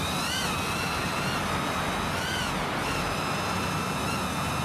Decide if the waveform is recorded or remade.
recorded